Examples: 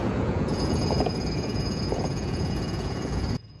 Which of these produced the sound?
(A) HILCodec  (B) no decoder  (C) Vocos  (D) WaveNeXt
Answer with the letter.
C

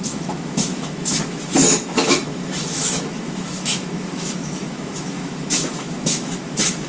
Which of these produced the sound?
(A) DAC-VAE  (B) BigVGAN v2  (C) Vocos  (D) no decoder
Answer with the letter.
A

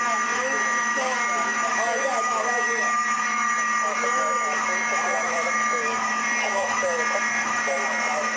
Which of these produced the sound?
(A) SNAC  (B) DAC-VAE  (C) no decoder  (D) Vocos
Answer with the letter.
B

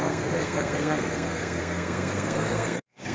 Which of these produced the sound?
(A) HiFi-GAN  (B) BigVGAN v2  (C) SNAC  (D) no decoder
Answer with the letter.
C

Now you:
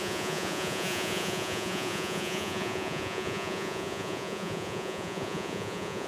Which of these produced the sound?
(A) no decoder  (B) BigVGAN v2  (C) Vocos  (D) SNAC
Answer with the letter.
C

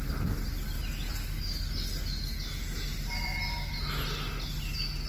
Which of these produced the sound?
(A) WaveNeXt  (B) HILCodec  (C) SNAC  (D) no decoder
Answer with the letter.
D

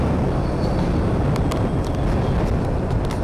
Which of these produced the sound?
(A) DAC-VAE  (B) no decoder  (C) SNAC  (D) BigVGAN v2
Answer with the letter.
B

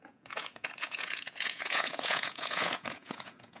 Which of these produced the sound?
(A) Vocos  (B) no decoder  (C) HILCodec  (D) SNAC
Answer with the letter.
A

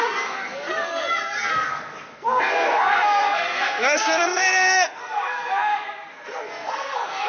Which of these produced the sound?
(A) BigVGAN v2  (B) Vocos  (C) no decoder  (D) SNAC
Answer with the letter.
D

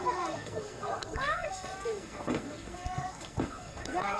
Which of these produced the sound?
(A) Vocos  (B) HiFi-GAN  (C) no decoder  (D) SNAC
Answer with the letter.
D